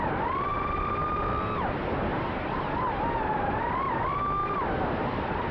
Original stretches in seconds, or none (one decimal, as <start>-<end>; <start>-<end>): 0.0-5.5